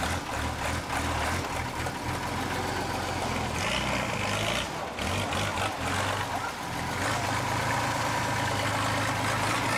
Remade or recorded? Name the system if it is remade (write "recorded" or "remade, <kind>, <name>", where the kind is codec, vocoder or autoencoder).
recorded